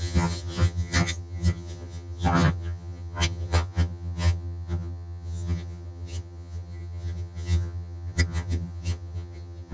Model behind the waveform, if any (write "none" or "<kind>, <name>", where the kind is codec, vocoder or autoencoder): vocoder, HiFi-GAN